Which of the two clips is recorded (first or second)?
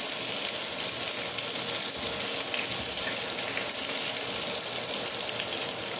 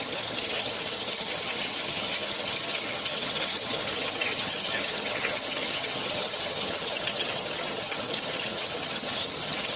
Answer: first